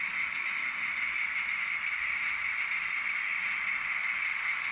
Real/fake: fake